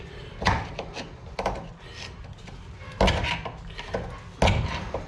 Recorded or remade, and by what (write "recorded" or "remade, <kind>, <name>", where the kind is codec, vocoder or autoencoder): recorded